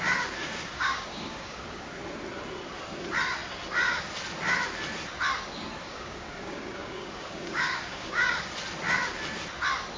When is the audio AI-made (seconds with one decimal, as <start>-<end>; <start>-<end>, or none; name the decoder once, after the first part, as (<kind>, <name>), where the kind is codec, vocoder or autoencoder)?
0.4-2.0 (codec, DAC); 5.8-8.3